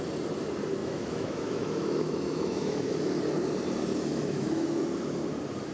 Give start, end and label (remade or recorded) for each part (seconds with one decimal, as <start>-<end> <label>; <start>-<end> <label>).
0.0-0.8 recorded; 0.8-2.9 remade; 2.9-4.1 recorded; 4.1-4.8 remade; 4.8-5.7 recorded